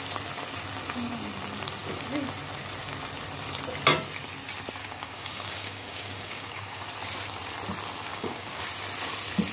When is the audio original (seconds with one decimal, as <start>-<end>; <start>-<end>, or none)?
0.0-4.8; 6.8-8.1; 8.6-9.5